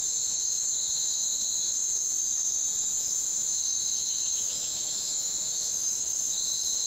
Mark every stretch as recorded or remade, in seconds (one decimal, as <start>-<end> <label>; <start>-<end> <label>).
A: 0.0-6.9 remade